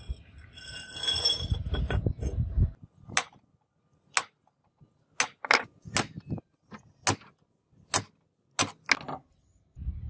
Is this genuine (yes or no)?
yes